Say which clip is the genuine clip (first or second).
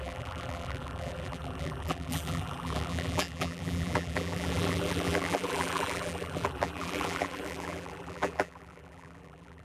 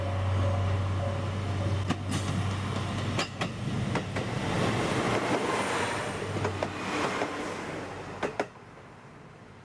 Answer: second